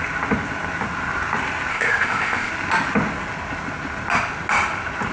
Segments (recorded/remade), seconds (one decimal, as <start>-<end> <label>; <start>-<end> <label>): 0.0-1.7 recorded; 1.7-2.5 remade; 2.5-5.1 recorded